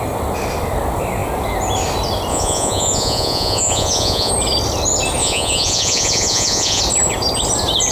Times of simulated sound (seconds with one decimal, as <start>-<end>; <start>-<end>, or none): 2.3-4.3; 5.2-6.8